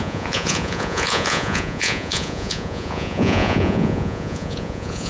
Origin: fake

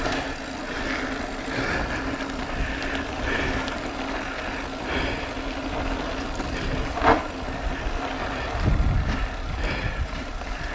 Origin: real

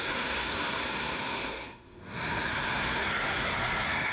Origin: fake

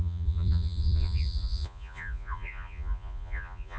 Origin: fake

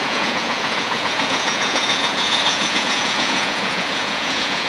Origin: fake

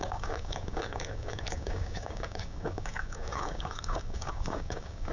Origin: fake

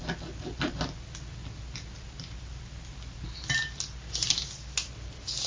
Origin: real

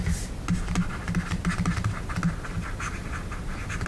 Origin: real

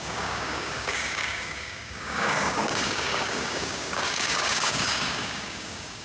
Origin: fake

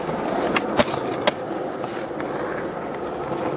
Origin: real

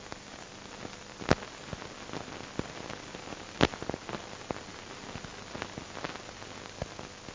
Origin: real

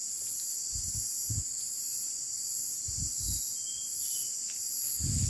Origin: real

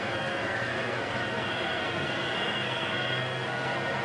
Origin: fake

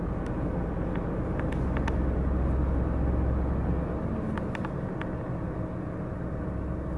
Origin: real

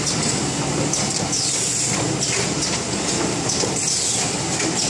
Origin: real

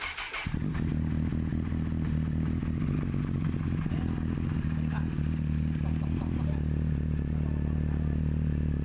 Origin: real